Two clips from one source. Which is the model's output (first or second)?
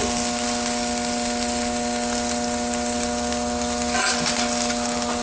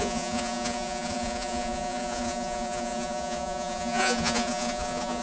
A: second